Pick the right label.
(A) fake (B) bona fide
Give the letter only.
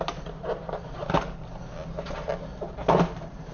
B